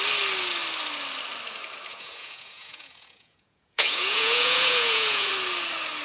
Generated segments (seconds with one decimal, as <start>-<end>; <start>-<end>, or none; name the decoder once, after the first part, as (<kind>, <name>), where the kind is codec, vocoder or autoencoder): 1.9-5.3 (vocoder, Vocos)